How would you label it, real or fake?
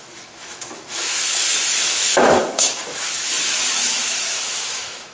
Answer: fake